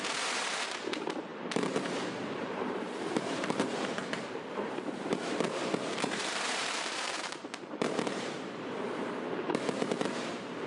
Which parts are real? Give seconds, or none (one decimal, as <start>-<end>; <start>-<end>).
none